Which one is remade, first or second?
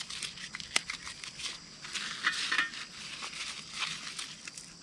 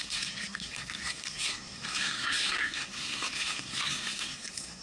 second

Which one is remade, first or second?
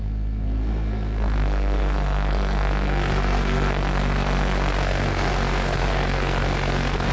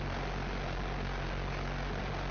first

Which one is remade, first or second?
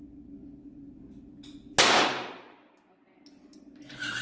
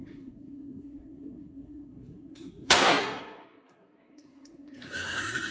second